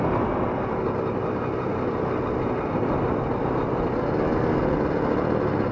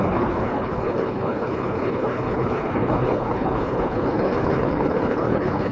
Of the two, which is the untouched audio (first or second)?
first